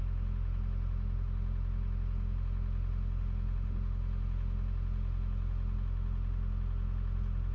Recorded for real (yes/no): yes